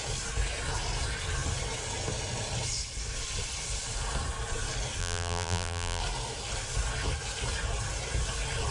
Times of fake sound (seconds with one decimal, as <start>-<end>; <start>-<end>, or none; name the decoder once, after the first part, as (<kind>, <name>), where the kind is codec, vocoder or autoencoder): 5.0-6.0 (vocoder, BigVGAN v2)